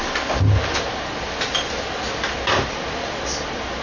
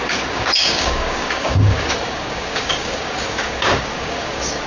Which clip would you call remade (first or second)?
second